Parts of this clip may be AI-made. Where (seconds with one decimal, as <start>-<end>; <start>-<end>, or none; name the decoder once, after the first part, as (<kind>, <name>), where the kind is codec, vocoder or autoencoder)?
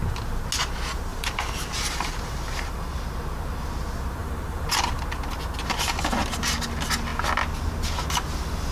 1.1-3.0 (vocoder, BigVGAN v2); 4.2-5.0